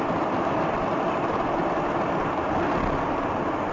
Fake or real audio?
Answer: fake